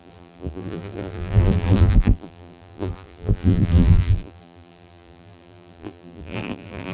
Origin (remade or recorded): remade